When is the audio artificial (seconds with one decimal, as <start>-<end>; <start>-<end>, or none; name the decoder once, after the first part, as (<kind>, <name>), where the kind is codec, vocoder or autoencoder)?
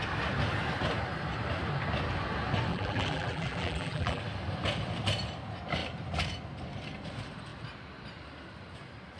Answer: 2.7-4.2 (vocoder, BigVGAN v2)